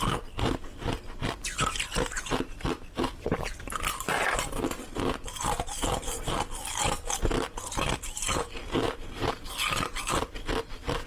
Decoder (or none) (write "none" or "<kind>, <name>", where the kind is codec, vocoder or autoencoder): none